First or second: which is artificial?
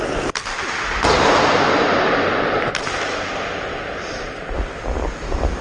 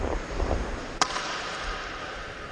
second